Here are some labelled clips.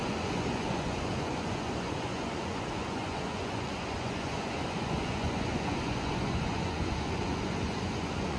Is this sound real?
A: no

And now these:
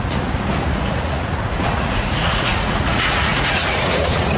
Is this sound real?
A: no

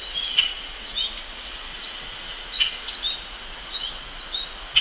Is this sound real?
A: no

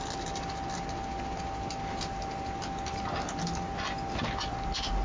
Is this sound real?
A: yes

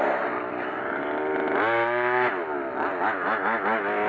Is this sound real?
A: yes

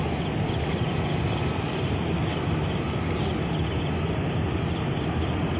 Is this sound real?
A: yes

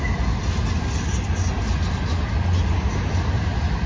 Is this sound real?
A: yes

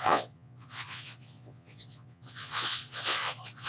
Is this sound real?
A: no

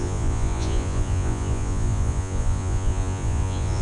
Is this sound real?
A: no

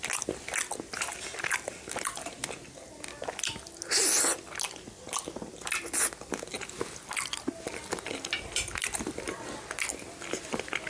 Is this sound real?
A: yes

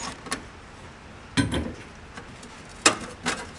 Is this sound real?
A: yes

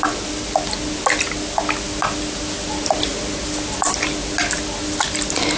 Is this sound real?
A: yes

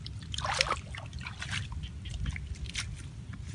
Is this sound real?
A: yes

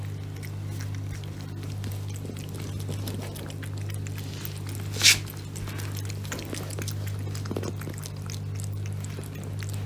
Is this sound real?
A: yes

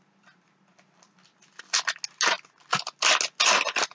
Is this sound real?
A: yes